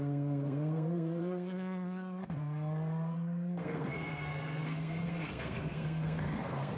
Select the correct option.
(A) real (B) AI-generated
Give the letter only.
B